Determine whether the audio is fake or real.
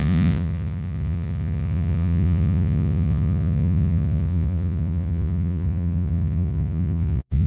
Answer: fake